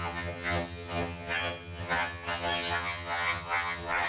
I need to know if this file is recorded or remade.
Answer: remade